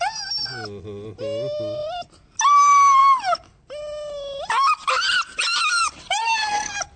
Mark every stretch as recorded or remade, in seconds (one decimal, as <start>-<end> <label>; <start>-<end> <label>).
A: 0.0-7.0 recorded